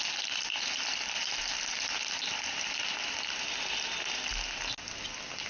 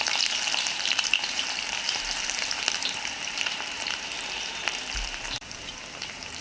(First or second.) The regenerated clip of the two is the second